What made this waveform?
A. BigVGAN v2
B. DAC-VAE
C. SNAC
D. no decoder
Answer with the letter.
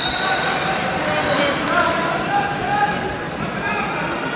D